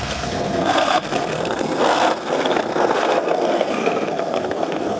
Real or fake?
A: fake